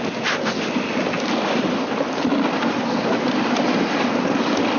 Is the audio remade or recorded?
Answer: recorded